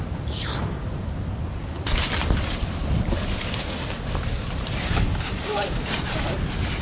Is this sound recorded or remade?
remade